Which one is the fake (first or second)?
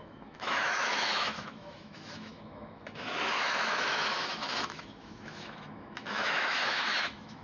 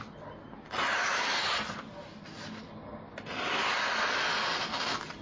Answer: first